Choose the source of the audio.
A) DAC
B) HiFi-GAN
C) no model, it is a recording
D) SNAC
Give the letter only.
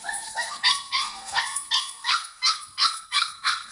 D